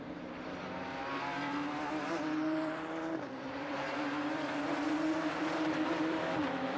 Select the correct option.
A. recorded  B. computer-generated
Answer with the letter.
B